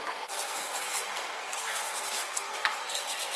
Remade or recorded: remade